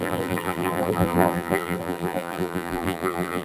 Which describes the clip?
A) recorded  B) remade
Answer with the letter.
B